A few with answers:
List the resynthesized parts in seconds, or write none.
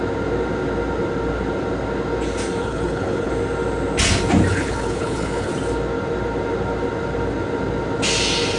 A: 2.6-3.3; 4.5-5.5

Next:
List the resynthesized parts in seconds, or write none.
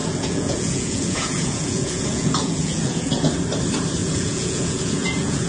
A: 0.0-3.3; 4.0-5.5